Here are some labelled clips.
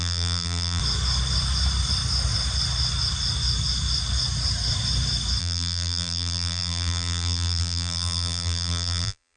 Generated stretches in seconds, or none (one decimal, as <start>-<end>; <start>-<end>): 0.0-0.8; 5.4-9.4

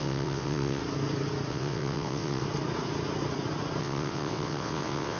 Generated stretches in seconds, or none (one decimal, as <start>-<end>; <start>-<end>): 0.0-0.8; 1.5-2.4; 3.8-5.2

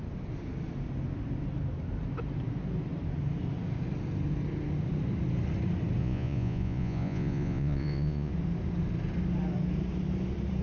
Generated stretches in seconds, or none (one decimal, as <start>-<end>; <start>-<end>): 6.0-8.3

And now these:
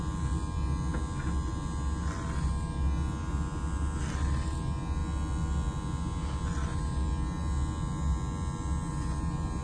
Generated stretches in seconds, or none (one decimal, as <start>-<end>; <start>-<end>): none

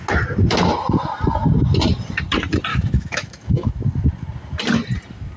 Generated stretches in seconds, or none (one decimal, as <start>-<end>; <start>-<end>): 2.7-3.7

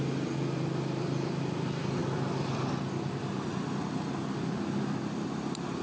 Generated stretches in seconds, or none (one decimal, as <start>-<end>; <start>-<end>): none

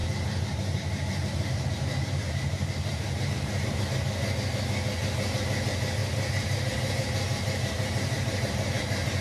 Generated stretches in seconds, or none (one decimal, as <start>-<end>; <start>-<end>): 0.0-3.8; 6.0-9.2